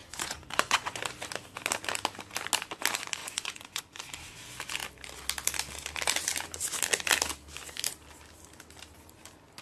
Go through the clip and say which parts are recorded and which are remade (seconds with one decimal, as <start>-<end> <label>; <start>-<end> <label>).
0.0-1.0 remade; 1.0-3.2 recorded; 3.2-3.8 remade; 3.8-9.6 recorded